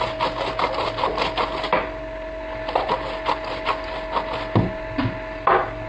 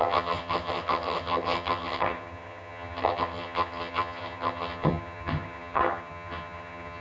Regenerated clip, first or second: second